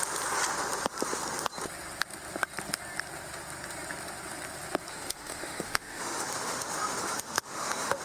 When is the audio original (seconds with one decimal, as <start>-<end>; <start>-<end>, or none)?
0.0-4.9